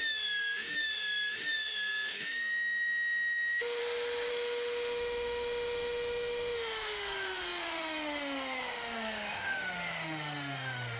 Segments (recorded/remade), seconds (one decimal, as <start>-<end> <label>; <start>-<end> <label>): 0.0-3.8 remade; 3.8-4.3 recorded; 4.3-11.0 remade